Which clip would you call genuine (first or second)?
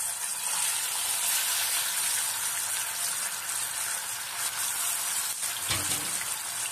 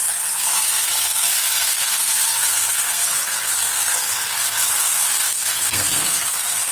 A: first